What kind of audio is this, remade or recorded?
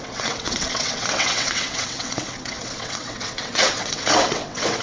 remade